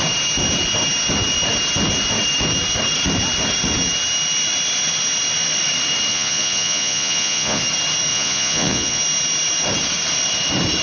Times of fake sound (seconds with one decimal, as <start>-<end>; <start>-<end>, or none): 6.1-7.6; 8.1-9.0